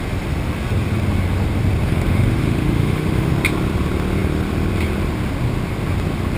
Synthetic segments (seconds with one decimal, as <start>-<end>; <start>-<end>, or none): 1.8-3.3